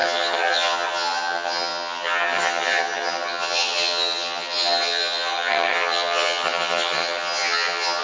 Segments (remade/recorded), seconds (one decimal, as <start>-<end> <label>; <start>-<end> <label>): 0.0-8.0 remade

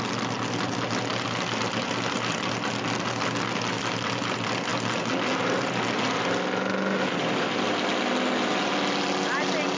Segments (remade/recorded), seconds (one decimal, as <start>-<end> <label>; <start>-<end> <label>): 0.0-9.8 recorded

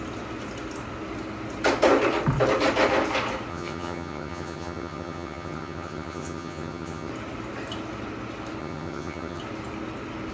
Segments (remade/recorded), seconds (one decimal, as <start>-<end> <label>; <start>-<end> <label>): 0.0-3.5 recorded; 3.5-7.1 remade; 7.1-8.6 recorded; 8.6-9.4 remade; 9.4-10.3 recorded

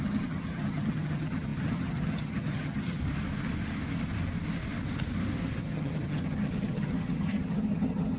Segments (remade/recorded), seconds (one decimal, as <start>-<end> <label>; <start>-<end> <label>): 0.0-3.0 remade; 3.0-5.6 recorded; 5.6-8.2 remade

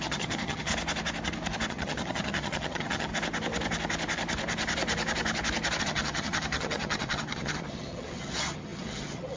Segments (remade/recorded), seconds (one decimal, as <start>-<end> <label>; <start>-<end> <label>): 0.0-0.7 remade; 0.7-1.7 recorded; 1.7-3.1 remade; 3.1-5.8 recorded; 5.8-9.4 remade